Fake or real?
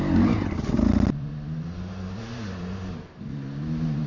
real